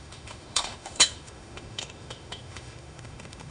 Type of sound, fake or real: fake